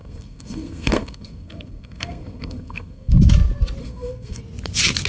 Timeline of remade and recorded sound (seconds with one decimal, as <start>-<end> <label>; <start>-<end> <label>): 0.0-3.1 remade; 3.1-3.8 recorded; 3.8-4.4 remade; 4.4-5.1 recorded